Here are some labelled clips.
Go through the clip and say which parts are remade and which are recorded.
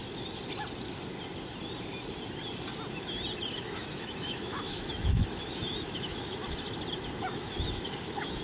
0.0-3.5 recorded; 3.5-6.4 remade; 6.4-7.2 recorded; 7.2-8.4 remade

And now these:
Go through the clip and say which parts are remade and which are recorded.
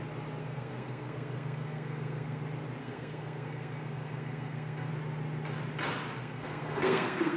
0.0-0.4 recorded; 0.4-2.4 remade; 2.4-2.8 recorded; 2.8-4.9 remade; 4.9-6.2 recorded; 6.2-7.4 remade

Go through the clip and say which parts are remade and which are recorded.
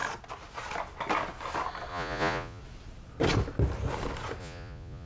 0.0-1.9 recorded; 1.9-2.6 remade; 2.6-4.4 recorded; 4.4-5.1 remade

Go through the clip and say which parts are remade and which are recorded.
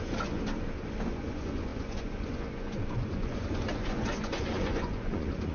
0.0-0.4 remade; 0.4-1.1 recorded; 1.1-5.5 remade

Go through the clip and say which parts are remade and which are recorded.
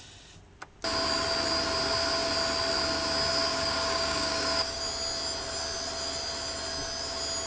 0.0-3.5 recorded; 3.5-4.8 remade; 4.8-7.5 recorded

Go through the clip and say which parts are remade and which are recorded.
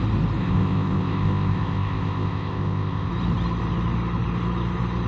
0.0-0.4 recorded; 0.4-3.1 remade; 3.1-5.1 recorded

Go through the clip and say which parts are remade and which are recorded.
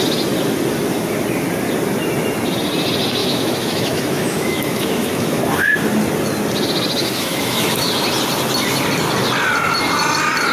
0.0-3.2 recorded; 3.2-5.4 remade; 5.4-7.0 recorded; 7.0-7.9 remade; 7.9-10.5 recorded